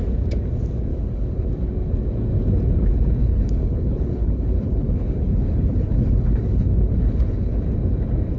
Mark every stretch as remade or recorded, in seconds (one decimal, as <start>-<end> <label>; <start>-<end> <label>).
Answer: 0.0-0.9 recorded; 0.9-1.5 remade; 1.5-3.2 recorded; 3.2-7.6 remade; 7.6-8.4 recorded